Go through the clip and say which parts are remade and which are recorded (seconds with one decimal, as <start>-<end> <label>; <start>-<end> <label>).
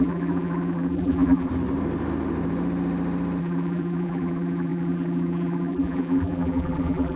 0.0-1.5 remade; 1.5-3.4 recorded; 3.4-7.2 remade